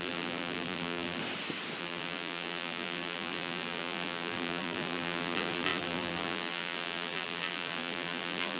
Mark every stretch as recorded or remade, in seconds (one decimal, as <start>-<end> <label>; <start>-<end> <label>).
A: 0.0-1.2 remade; 1.2-1.8 recorded; 1.8-8.6 remade